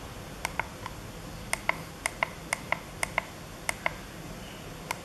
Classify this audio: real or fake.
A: real